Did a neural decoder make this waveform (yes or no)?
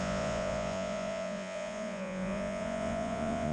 yes